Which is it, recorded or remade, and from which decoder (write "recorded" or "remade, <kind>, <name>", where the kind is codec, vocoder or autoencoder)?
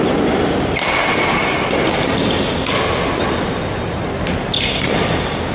recorded